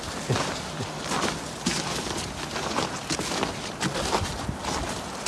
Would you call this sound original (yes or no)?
yes